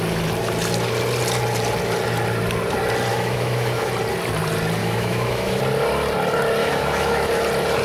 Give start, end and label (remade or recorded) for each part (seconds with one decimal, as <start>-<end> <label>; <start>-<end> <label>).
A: 0.0-3.1 recorded; 3.1-3.9 remade; 3.9-4.8 recorded; 4.8-5.6 remade; 5.6-6.6 recorded; 6.6-7.3 remade; 7.3-7.8 recorded